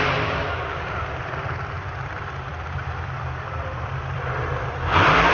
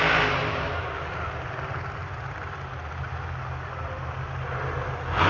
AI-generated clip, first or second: first